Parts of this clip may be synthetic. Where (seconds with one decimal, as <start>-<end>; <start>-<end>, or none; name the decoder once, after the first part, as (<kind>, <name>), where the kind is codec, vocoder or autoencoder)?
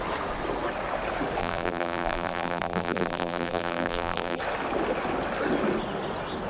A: 1.4-4.4 (vocoder, BigVGAN v2)